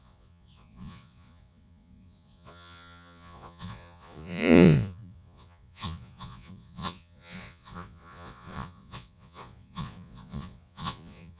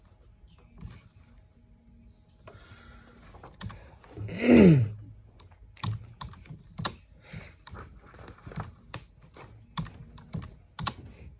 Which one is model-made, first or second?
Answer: first